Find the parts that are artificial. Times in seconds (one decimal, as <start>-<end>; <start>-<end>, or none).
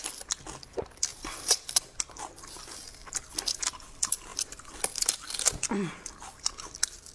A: 1.1-2.0; 4.3-4.8